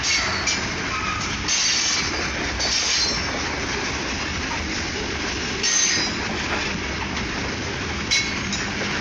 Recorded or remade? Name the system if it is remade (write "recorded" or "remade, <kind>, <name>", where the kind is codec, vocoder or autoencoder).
recorded